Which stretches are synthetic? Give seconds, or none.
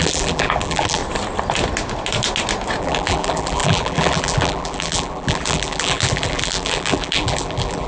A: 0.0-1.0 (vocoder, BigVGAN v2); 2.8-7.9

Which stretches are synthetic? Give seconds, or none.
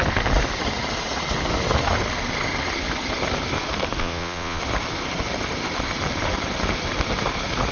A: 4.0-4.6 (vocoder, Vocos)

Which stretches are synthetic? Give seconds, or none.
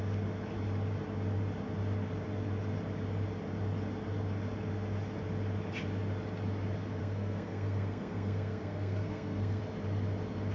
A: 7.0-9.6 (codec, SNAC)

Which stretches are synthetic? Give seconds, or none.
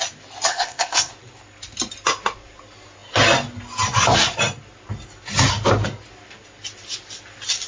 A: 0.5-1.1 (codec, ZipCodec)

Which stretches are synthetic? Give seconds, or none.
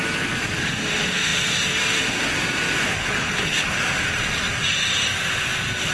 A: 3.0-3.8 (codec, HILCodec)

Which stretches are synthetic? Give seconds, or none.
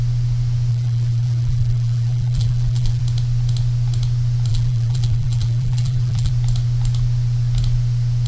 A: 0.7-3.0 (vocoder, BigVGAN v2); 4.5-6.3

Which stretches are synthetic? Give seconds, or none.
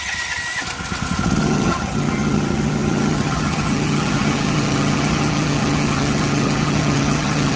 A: 0.0-0.4 (vocoder, HiFi-GAN); 1.4-7.6